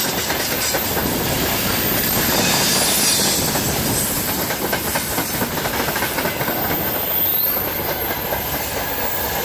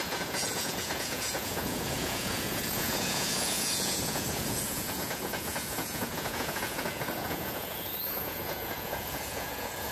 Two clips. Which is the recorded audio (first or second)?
first